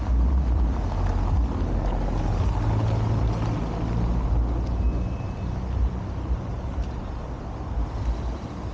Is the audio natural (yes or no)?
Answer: yes